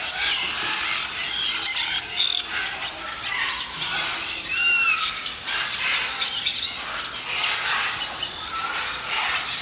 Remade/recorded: recorded